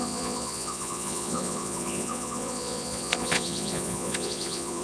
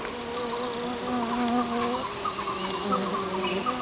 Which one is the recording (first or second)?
second